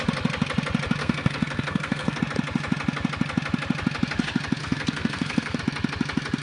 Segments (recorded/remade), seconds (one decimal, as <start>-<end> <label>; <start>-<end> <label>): 0.0-1.0 recorded; 1.0-2.2 remade; 2.2-4.6 recorded; 4.6-5.6 remade; 5.6-6.4 recorded